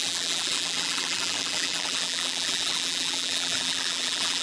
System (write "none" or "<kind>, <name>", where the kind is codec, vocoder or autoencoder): vocoder, BigVGAN v2